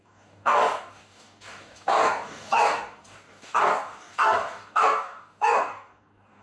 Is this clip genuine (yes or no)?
no